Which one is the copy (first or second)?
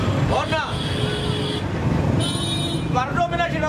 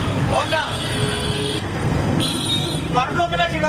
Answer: second